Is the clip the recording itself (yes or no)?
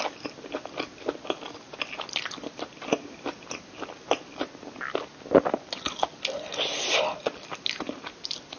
yes